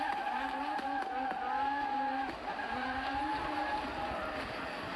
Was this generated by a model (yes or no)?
no